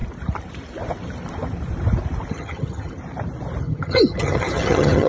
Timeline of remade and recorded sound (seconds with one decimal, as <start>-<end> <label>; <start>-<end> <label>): 0.0-2.3 recorded; 2.3-3.0 remade; 3.0-3.6 recorded; 3.6-5.1 remade